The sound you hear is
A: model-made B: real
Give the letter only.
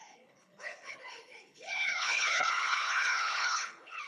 A